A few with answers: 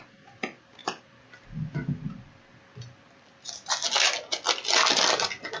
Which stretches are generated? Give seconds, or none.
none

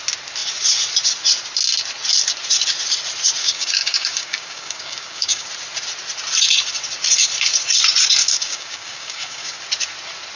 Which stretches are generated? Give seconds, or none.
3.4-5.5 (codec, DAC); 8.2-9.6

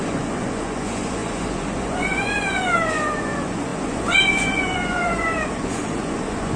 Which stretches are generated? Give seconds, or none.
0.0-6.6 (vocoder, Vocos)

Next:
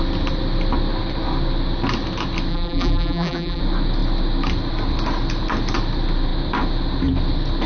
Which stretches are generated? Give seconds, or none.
2.5-3.6 (vocoder, BigVGAN v2)